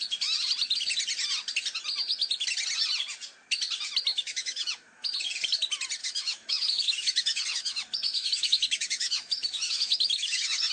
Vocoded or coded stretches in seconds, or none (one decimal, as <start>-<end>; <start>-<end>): 4.1-5.1; 6.0-10.7